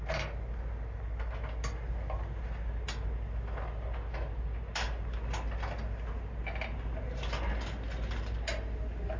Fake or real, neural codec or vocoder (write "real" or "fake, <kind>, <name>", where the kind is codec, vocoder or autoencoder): real